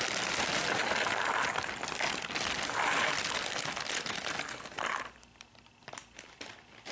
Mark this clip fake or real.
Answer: fake